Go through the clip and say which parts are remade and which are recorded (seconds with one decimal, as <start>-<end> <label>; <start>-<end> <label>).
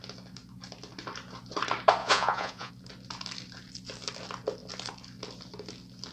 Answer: 0.0-2.0 recorded; 2.0-2.7 remade; 2.7-6.1 recorded